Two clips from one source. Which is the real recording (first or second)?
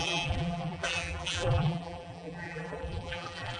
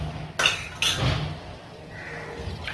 second